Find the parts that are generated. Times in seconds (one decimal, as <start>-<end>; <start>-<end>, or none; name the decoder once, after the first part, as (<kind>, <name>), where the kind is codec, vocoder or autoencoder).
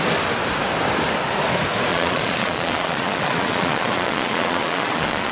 1.9-5.3 (vocoder, Vocos)